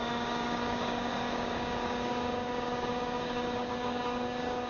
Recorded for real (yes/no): no